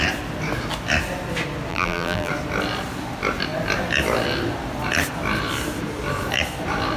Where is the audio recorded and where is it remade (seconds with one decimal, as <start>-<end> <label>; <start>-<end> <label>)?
0.0-1.7 recorded; 1.7-2.3 remade; 2.3-7.0 recorded